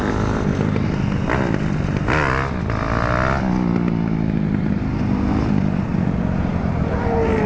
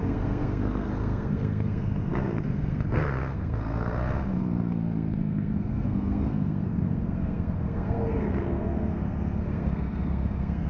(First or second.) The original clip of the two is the first